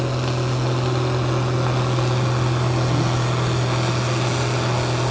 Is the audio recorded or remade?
recorded